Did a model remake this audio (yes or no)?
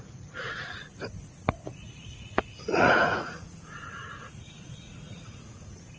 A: yes